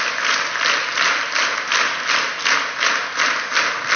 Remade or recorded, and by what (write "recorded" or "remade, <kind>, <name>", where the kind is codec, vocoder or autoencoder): recorded